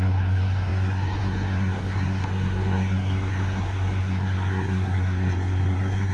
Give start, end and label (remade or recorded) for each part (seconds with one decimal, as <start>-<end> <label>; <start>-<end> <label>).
0.0-6.1 remade

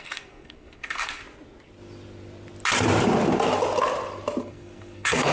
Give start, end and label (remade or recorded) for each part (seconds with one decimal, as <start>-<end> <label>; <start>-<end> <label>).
0.0-1.2 remade; 1.2-4.4 recorded; 4.4-5.3 remade

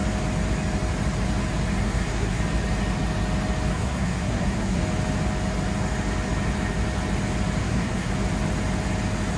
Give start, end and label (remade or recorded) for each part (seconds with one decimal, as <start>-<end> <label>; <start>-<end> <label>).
0.0-1.8 recorded; 1.8-2.4 remade; 2.4-3.7 recorded; 3.7-4.8 remade; 4.8-7.6 recorded; 7.6-8.1 remade; 8.1-9.4 recorded

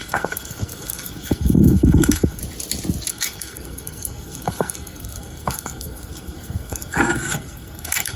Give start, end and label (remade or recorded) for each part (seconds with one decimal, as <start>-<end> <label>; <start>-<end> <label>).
0.0-2.4 remade; 2.4-3.1 recorded; 3.1-8.2 remade